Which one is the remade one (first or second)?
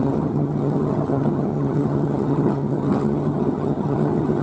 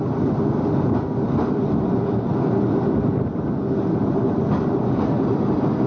first